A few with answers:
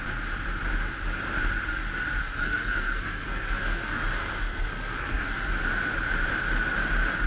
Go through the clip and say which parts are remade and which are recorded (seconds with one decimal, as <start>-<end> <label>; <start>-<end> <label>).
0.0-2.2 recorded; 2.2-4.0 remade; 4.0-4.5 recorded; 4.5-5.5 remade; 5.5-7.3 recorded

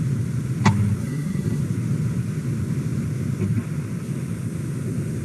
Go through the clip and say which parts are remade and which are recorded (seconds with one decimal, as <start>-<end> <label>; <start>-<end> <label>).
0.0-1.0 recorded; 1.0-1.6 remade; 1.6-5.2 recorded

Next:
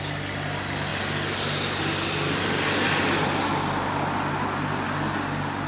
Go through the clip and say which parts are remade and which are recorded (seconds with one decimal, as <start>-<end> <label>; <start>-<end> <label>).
0.0-5.7 recorded

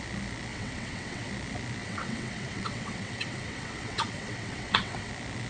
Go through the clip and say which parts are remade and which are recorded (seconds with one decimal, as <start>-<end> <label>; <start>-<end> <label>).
0.0-0.5 recorded; 0.5-1.3 remade; 1.3-1.8 recorded; 1.8-5.1 remade; 5.1-5.5 recorded